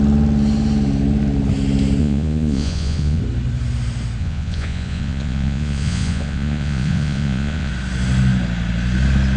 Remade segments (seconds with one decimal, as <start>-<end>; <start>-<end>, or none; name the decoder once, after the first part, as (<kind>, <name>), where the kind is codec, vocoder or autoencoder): 2.0-3.2 (vocoder, Vocos); 4.2-7.7